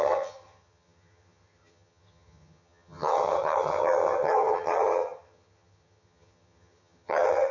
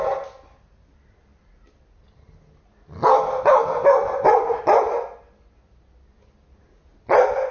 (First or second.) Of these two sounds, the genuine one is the second